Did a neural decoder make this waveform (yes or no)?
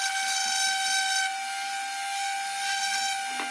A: no